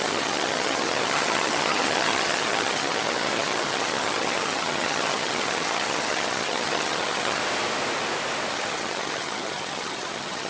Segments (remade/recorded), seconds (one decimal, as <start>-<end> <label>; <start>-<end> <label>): 0.0-7.4 remade; 7.4-8.5 recorded; 8.5-10.5 remade